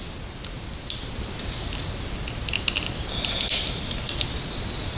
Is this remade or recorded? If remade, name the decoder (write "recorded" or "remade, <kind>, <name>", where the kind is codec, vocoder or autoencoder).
recorded